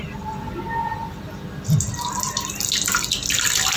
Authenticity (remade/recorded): recorded